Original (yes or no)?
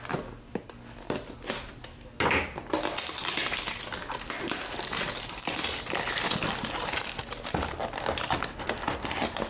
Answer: yes